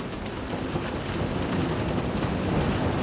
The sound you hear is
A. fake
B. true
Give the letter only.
B